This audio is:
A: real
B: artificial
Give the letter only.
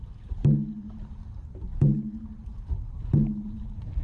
B